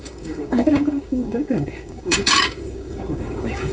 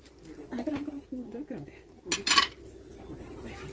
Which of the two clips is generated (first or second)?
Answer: first